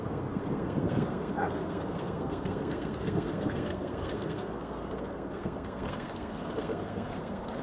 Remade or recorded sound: remade